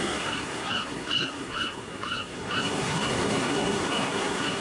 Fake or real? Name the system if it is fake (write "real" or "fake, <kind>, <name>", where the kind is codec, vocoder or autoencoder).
fake, codec, SNAC